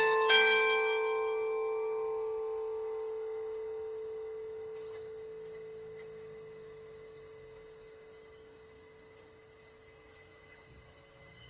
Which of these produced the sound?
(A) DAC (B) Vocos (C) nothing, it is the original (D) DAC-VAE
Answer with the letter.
D